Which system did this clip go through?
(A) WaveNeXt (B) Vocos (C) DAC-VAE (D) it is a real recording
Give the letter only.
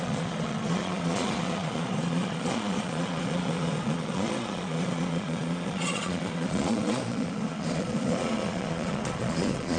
B